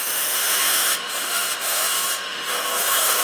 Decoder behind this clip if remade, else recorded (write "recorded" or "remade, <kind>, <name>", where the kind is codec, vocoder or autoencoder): remade, autoencoder, DAC-VAE